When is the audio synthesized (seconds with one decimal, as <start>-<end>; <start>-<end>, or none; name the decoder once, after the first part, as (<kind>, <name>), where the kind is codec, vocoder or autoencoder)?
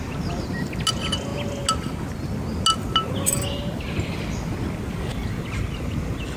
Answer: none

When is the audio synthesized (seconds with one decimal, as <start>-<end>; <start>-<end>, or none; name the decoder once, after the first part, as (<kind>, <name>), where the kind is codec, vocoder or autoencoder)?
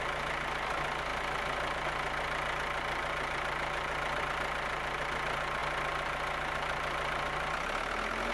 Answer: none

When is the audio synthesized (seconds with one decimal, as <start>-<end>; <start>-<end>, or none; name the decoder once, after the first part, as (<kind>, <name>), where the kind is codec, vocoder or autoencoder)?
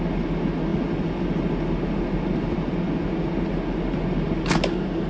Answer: none